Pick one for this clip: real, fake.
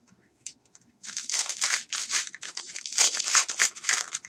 fake